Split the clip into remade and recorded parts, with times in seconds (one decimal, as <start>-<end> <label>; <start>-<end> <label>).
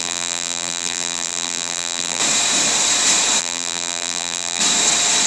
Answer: 0.0-2.2 remade; 2.2-3.4 recorded; 3.4-4.6 remade; 4.6-5.3 recorded